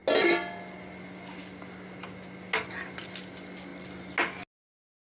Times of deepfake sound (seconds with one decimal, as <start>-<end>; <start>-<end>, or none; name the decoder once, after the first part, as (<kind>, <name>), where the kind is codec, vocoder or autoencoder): none